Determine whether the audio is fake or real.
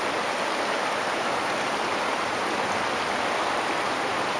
real